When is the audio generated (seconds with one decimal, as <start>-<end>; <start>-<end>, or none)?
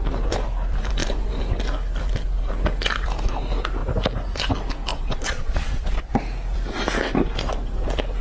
4.9-6.1